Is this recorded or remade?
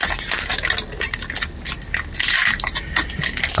recorded